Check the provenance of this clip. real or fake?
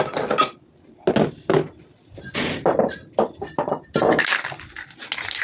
real